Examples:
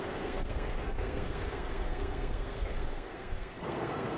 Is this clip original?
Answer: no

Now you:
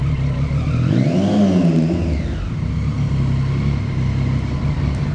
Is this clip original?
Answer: yes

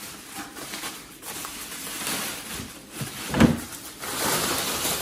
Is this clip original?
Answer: no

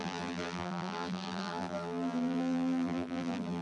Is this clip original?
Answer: no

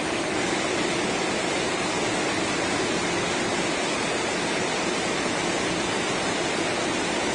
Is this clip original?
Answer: yes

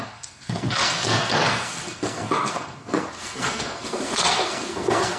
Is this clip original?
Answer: no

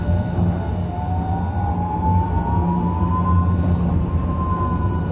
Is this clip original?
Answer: yes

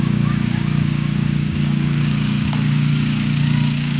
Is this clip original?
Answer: no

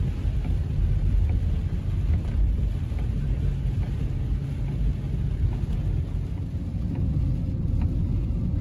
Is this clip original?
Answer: yes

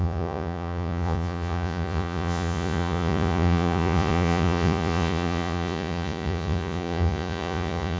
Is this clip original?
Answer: no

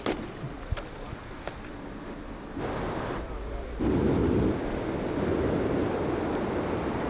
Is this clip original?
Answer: yes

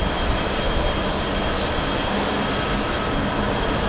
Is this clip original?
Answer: yes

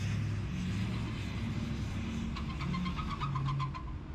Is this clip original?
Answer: yes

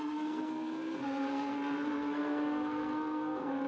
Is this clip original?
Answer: no